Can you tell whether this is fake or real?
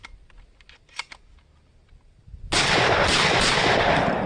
real